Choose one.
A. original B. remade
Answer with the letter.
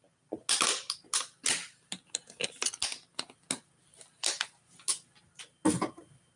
A